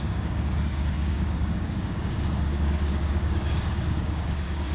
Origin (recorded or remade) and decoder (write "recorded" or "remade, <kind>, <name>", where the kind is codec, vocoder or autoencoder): remade, codec, DAC